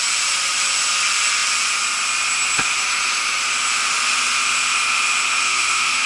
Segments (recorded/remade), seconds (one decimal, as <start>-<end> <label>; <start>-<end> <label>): 0.0-5.4 recorded; 5.4-6.1 remade